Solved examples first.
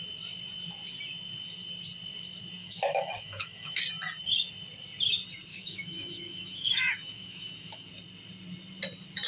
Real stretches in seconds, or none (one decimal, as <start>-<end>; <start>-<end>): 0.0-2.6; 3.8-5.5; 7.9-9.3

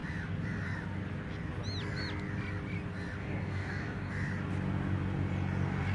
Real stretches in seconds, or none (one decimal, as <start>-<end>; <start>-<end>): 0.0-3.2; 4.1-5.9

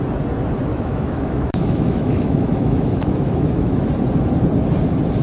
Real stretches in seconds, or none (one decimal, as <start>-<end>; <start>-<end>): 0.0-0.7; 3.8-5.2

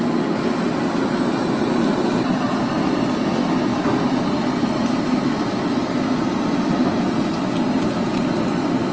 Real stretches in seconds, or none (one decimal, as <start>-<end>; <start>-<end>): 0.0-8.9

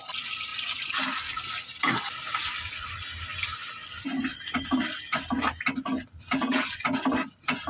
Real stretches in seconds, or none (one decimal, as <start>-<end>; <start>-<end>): 0.0-0.5; 1.8-3.6; 5.2-7.7

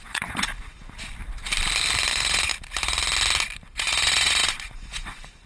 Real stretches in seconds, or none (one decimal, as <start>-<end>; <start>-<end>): 0.5-2.1; 2.5-3.6